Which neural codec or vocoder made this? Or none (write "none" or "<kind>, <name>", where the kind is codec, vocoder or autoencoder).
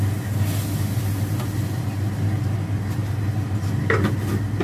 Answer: none